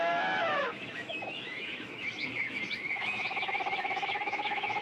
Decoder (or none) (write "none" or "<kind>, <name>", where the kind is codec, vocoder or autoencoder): autoencoder, DAC-VAE